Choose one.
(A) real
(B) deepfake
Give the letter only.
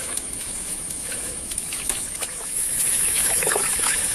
B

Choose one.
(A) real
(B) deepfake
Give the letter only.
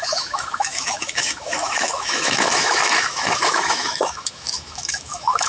B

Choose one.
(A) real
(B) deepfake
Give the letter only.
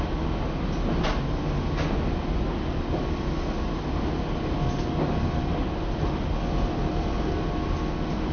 A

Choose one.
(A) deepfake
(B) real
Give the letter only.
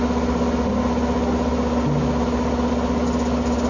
B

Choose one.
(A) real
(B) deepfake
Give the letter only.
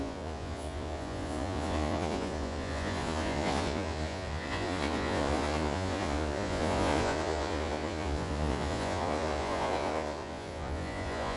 B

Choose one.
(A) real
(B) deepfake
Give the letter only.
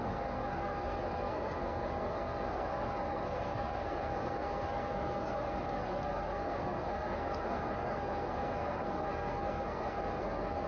B